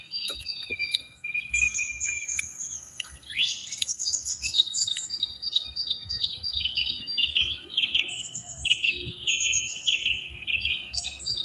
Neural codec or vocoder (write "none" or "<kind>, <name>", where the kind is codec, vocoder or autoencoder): codec, SNAC